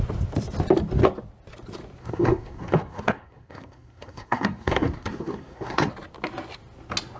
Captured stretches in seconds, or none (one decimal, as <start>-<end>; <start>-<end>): 0.0-2.0; 5.9-7.2